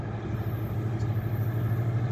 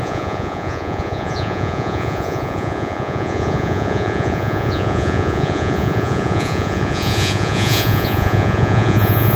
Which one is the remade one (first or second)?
second